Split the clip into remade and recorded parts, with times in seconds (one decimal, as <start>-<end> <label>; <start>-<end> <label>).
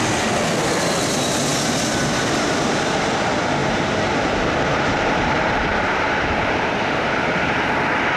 0.0-3.6 recorded; 3.6-7.7 remade; 7.7-8.2 recorded